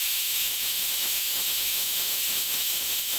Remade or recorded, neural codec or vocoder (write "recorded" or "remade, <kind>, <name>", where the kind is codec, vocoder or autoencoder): remade, autoencoder, DAC-VAE